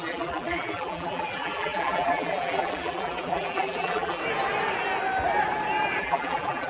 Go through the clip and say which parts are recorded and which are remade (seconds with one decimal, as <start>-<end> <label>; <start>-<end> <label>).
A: 0.0-4.2 remade; 4.2-6.0 recorded; 6.0-6.7 remade